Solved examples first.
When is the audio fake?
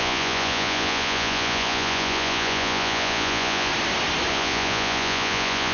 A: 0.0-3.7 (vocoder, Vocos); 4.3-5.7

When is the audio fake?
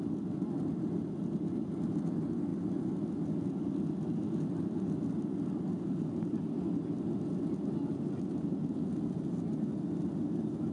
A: none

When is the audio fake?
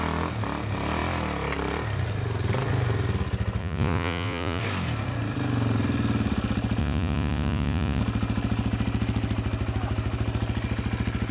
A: 3.6-4.6 (vocoder, Vocos); 6.8-8.0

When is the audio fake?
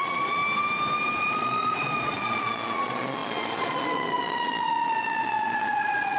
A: 0.0-0.4 (vocoder, Vocos); 1.2-6.2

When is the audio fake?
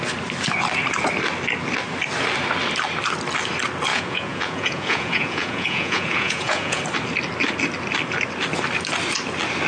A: 3.9-6.8 (vocoder, Vocos)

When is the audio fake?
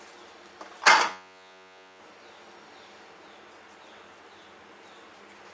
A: 1.1-2.0 (vocoder, Vocos)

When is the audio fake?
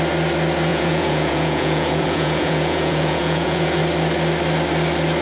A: 0.7-3.8 (vocoder, Vocos)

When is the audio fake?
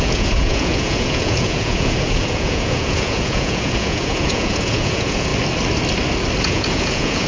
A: 0.0-5.3 (vocoder, Vocos); 6.4-7.3